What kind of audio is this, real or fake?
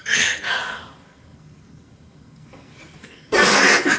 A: fake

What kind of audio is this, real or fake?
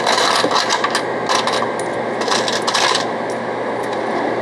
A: real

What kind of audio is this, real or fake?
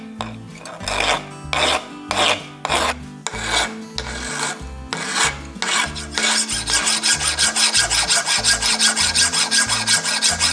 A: real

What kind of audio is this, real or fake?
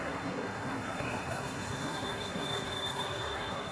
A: fake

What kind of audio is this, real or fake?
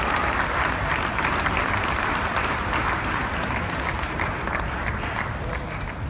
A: real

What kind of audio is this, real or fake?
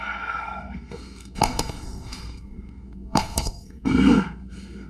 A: fake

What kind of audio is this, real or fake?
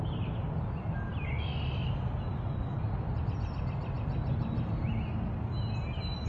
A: real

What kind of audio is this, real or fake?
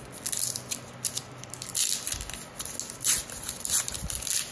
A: real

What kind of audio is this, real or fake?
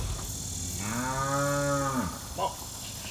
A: real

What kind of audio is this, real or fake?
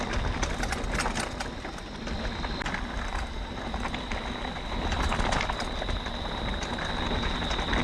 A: real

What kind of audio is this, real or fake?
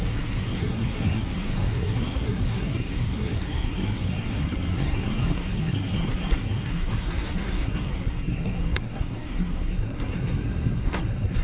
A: fake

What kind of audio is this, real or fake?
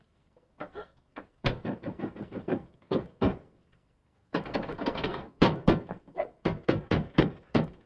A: fake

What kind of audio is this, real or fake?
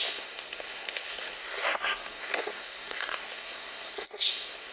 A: fake